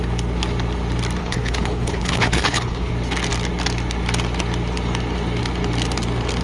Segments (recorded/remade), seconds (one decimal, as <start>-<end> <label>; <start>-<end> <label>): 0.0-1.2 recorded; 1.2-2.9 remade; 2.9-6.4 recorded